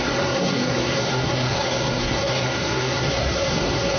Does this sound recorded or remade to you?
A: remade